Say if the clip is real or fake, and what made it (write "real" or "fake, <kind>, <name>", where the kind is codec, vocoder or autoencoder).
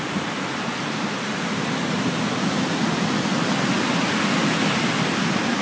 real